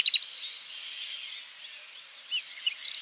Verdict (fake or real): real